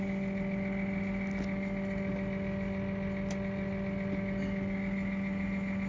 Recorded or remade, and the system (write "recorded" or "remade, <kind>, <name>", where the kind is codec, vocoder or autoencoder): recorded